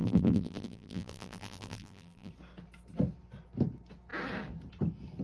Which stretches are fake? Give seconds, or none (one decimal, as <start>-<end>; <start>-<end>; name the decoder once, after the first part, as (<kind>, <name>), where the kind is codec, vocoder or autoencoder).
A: 0.0-2.3 (vocoder, BigVGAN v2)